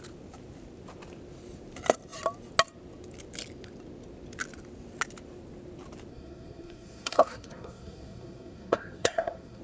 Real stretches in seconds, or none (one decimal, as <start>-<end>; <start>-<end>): 0.0-6.1